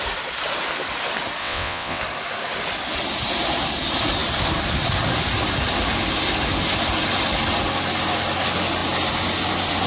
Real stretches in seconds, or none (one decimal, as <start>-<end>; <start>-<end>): 0.0-1.4; 2.0-9.9